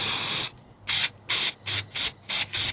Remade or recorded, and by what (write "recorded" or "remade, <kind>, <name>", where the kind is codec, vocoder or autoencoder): recorded